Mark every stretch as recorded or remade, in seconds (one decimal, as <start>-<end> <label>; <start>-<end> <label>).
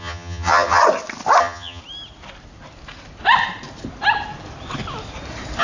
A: 0.0-0.8 remade; 0.8-1.4 recorded; 1.4-1.8 remade; 1.8-5.6 recorded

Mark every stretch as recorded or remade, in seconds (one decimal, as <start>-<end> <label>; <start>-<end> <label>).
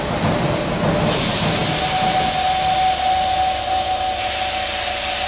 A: 0.0-5.3 recorded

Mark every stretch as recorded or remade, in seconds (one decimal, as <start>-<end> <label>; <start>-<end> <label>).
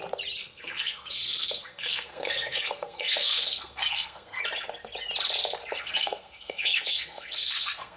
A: 0.0-0.4 recorded; 0.4-4.4 remade; 4.4-5.7 recorded; 5.7-8.0 remade